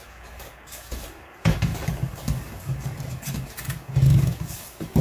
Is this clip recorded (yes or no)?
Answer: no